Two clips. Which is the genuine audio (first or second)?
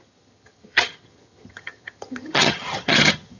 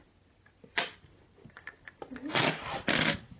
second